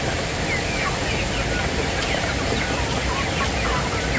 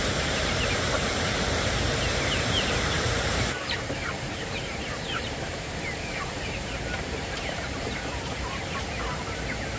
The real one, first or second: first